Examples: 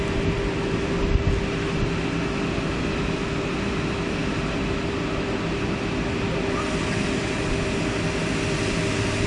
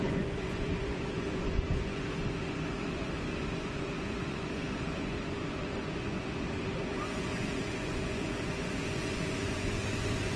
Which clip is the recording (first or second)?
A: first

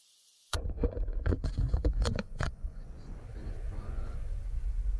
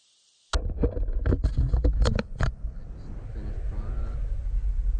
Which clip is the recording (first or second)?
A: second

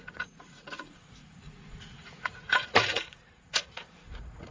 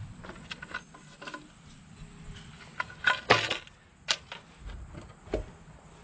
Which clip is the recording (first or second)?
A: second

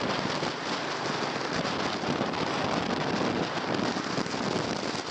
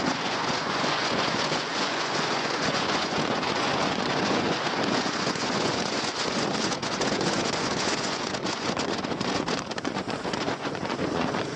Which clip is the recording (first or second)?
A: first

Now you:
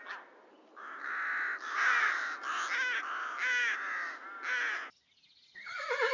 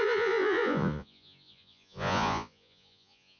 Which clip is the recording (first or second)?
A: first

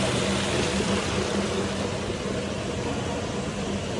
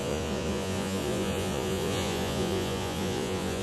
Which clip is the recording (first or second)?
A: first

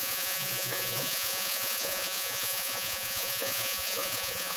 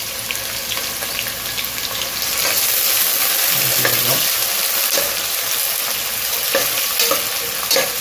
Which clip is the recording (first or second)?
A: second